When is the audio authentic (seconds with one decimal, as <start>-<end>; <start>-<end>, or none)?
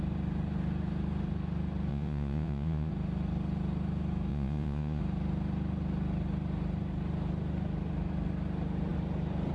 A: 0.0-1.9; 2.9-4.3; 5.0-9.5